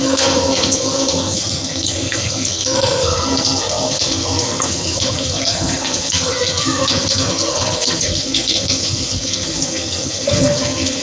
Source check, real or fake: fake